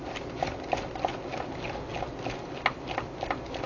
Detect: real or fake real